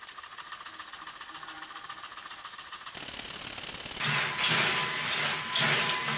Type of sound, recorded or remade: recorded